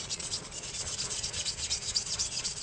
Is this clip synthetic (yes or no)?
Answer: yes